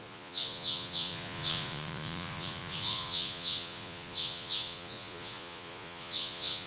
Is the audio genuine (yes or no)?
no